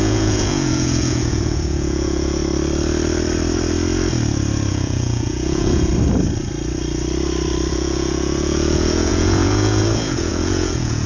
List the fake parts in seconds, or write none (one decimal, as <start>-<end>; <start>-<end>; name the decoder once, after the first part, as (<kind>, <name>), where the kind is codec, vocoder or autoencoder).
0.0-2.4 (vocoder, Vocos); 4.7-5.9; 7.7-11.1